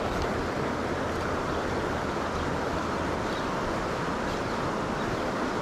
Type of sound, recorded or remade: recorded